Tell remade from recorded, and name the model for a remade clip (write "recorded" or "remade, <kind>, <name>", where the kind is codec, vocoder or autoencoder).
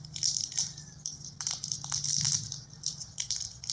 recorded